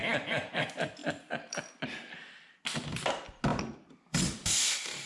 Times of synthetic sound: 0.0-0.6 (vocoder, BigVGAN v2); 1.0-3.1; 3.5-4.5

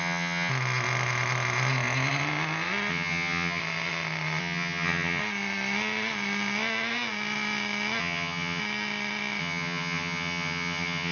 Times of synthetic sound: 0.0-0.5 (vocoder, HiFi-GAN); 2.9-3.6; 4.4-5.2; 8.0-8.6; 9.4-11.1